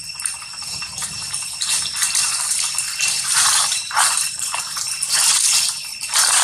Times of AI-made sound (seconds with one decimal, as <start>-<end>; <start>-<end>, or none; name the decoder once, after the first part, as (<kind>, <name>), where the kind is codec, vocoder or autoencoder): 2.2-4.9 (vocoder, BigVGAN v2)

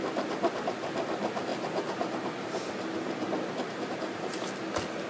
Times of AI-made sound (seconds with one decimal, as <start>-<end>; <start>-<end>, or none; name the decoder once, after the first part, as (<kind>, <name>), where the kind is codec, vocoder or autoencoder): none